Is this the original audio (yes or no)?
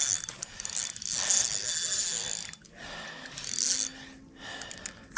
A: yes